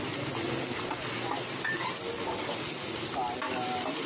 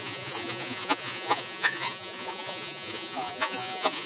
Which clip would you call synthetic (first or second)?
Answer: second